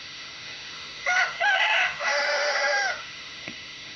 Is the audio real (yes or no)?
no